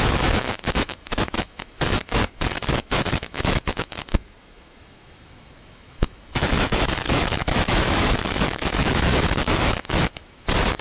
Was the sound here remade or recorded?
remade